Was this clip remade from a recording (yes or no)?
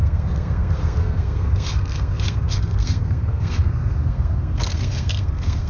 yes